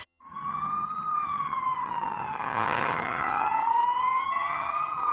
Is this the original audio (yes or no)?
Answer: no